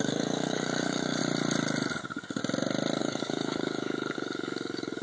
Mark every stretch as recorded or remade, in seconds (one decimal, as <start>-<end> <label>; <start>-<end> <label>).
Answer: 0.0-1.2 remade; 1.2-2.0 recorded; 2.0-2.4 remade; 2.4-3.0 recorded; 3.0-5.0 remade